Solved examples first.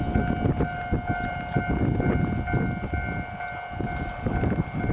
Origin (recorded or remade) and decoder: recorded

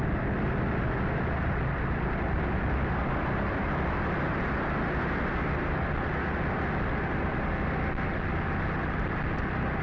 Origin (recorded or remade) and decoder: recorded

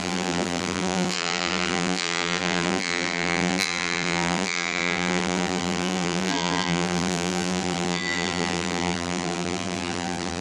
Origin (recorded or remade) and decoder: remade, vocoder, BigVGAN v2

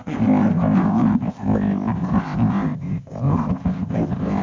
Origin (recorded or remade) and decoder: remade, codec, ZipCodec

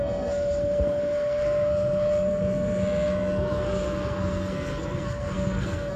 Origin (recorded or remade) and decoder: remade, codec, SNAC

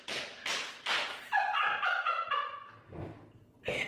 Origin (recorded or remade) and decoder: recorded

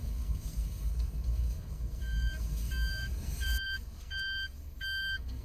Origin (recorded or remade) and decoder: remade, codec, SNAC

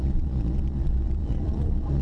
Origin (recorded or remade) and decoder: remade, vocoder, Vocos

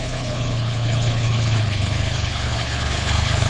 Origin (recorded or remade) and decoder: remade, codec, HILCodec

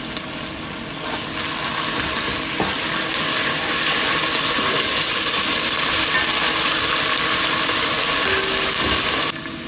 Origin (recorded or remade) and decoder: recorded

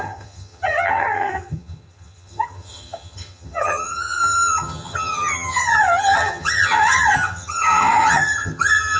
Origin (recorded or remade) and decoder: remade, vocoder, HiFi-GAN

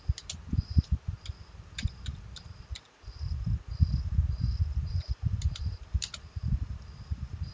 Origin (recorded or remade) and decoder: remade, vocoder, BigVGAN v2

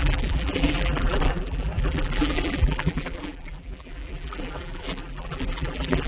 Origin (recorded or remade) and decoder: remade, vocoder, BigVGAN v2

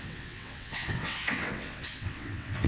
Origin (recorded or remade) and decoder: remade, vocoder, WaveNeXt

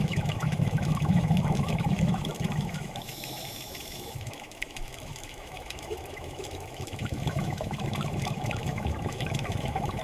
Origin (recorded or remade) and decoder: remade, autoencoder, DAC-VAE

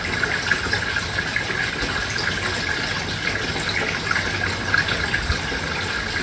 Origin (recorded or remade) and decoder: recorded